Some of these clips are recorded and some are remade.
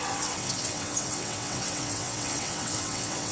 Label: remade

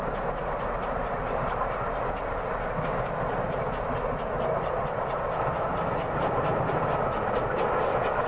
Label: recorded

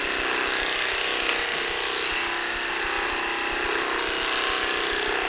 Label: recorded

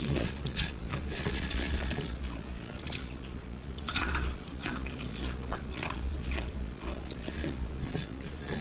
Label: remade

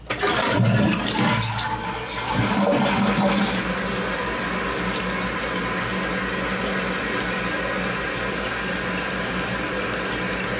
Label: recorded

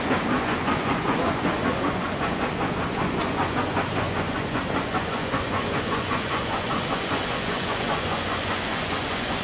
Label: remade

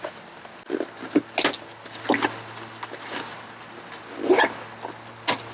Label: recorded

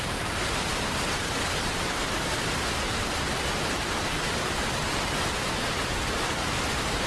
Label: remade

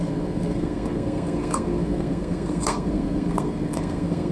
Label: remade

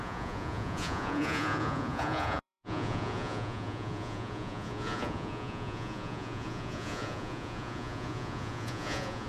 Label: remade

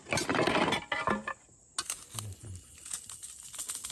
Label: recorded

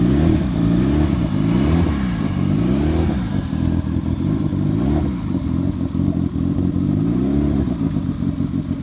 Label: recorded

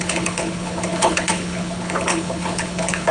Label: remade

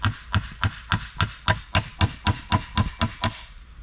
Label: recorded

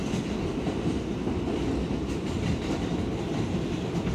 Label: recorded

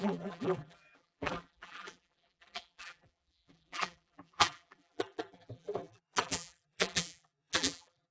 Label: remade